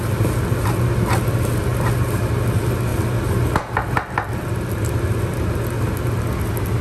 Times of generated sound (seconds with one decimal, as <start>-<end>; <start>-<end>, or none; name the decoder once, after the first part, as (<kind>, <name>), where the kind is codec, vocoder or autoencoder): none